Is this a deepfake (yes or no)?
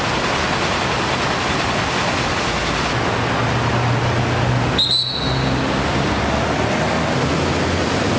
no